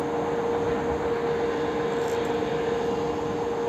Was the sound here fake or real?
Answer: real